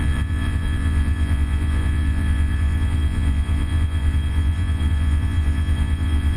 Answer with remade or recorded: remade